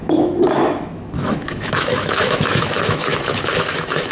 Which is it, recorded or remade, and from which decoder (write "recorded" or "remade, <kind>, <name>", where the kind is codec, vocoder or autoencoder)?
remade, autoencoder, DAC-VAE